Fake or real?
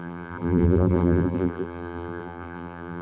fake